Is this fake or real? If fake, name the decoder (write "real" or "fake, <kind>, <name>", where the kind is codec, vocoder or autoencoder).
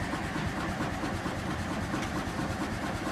real